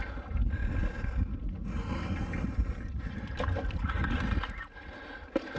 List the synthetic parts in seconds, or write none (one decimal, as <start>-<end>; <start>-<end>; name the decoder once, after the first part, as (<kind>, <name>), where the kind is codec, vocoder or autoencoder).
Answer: none